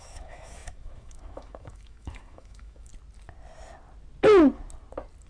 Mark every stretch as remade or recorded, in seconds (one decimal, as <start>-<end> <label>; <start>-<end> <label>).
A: 0.0-2.9 remade; 2.9-5.3 recorded